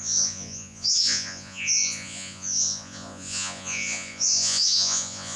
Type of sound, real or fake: fake